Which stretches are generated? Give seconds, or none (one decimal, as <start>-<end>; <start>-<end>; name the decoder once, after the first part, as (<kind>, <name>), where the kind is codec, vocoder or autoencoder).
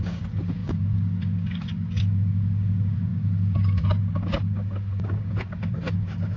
0.0-6.4 (codec, DAC)